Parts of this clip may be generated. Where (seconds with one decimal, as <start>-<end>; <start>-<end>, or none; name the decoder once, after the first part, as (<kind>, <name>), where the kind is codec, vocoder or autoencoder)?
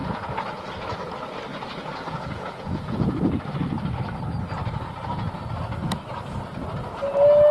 0.0-0.7 (vocoder, Vocos); 1.5-3.1